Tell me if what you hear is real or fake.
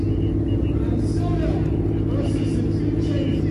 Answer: real